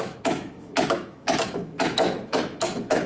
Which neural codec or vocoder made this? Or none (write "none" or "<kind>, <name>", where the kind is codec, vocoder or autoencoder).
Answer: autoencoder, DAC-VAE